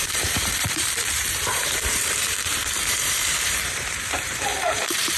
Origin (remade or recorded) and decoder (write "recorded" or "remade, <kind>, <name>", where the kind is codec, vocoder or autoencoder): remade, vocoder, BigVGAN v2